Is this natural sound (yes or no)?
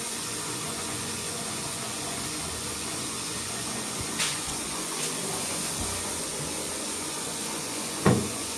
no